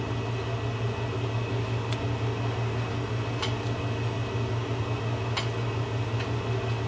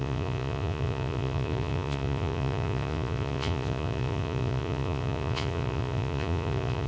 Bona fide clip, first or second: first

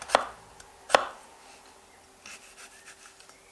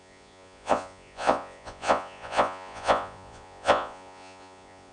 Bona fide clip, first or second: first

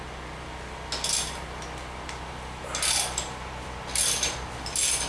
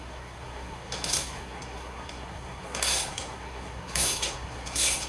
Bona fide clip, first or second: first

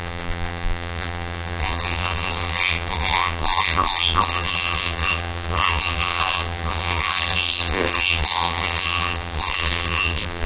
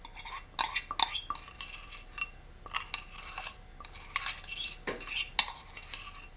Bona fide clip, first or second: second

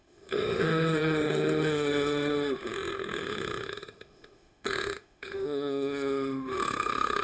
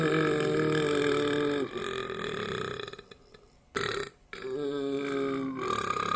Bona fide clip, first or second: second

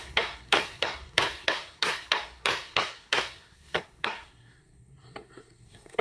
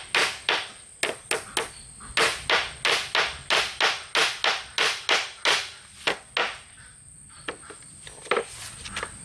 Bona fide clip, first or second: second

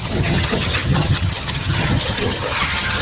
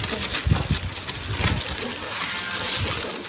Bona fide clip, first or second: second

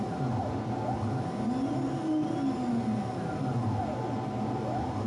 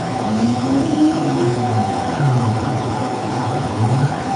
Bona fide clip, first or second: first